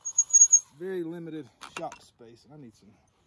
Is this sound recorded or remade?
recorded